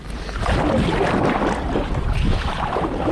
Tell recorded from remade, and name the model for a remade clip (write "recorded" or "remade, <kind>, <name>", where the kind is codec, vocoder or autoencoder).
recorded